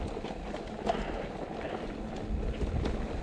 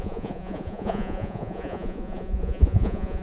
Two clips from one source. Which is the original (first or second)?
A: first